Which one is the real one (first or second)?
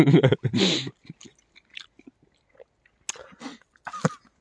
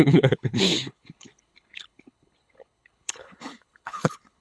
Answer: first